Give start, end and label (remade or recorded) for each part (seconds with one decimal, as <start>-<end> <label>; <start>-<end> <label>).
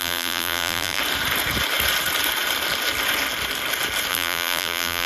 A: 0.0-1.0 remade; 1.0-4.1 recorded; 4.1-5.1 remade